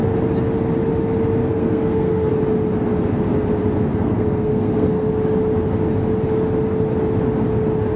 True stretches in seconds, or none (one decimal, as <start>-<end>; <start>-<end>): 0.0-1.4; 2.3-3.9; 5.1-8.0